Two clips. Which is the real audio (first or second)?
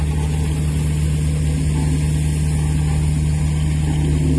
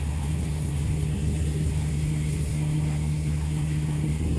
first